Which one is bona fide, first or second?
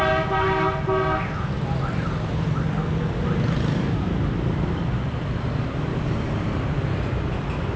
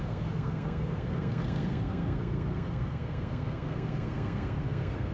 first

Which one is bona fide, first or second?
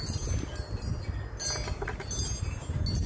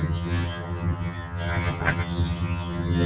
first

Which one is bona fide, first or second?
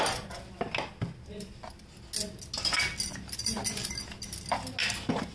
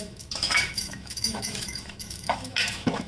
first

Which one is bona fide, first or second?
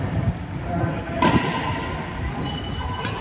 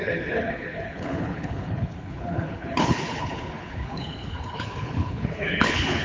first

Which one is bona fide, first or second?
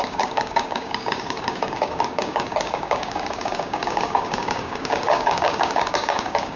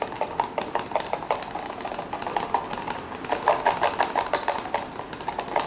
second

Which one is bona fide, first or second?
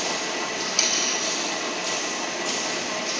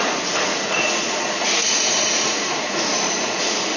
first